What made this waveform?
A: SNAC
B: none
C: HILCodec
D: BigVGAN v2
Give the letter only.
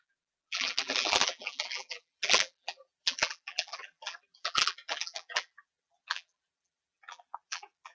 D